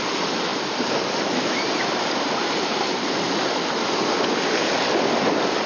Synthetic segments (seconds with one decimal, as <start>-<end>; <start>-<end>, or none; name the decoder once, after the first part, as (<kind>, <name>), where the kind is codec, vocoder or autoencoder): 0.5-3.5 (vocoder, BigVGAN v2)